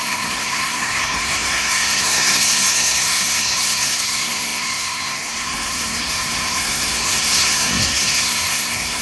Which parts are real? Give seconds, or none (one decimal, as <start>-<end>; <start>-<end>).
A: none